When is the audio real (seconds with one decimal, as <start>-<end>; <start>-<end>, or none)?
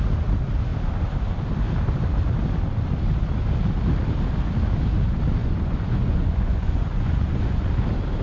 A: 0.0-5.4; 7.6-8.2